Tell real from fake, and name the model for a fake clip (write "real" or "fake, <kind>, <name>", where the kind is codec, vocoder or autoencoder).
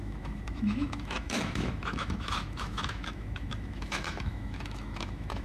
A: fake, autoencoder, DAC-VAE